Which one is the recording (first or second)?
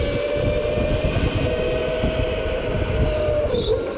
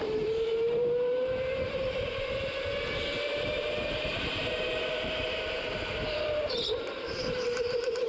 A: first